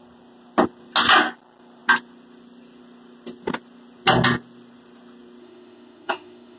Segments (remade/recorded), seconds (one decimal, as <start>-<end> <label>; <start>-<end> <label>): 0.0-5.4 recorded; 5.4-6.6 remade